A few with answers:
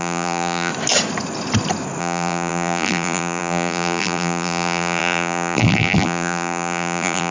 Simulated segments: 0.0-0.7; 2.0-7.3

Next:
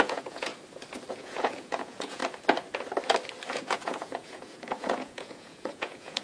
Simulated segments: 0.0-0.5; 1.1-2.2; 3.5-6.2